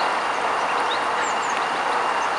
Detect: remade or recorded recorded